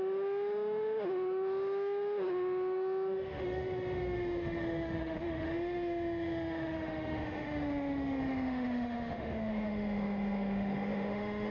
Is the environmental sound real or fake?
fake